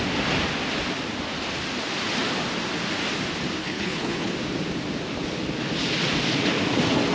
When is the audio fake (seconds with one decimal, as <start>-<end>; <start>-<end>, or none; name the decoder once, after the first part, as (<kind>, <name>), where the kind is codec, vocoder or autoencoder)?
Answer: 3.6-4.3 (codec, HILCodec)